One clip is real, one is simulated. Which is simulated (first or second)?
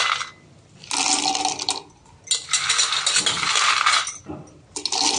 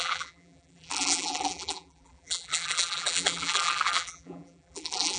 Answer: second